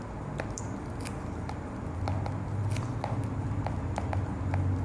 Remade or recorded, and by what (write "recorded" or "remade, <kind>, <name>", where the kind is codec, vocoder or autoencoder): recorded